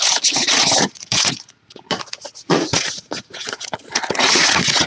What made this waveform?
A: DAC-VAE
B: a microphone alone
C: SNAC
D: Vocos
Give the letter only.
D